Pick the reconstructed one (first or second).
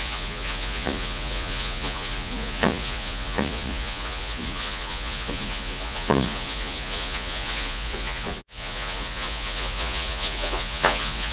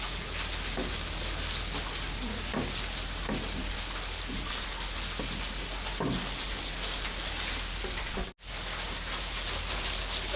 first